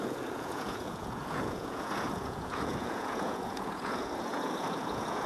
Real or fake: fake